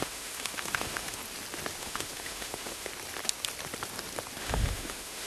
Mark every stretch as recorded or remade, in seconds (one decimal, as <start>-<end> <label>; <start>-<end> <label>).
0.0-1.2 remade; 1.2-1.8 recorded; 1.8-2.9 remade; 2.9-4.4 recorded; 4.4-5.3 remade